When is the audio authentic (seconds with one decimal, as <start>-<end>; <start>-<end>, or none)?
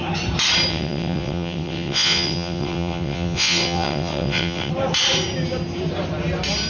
0.0-0.7; 4.7-6.7